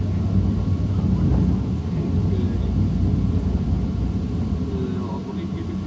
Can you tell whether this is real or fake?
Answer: real